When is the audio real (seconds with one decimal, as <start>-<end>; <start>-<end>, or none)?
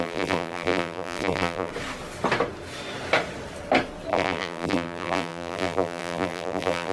1.7-4.1